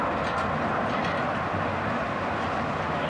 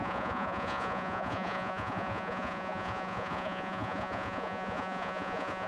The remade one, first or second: second